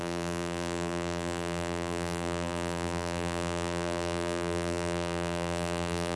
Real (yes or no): no